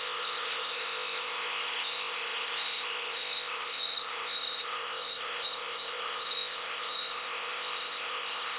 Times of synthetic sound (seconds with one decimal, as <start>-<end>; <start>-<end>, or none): 0.0-8.6